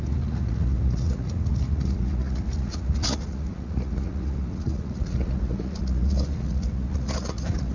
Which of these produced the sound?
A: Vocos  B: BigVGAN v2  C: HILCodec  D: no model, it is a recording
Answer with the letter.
A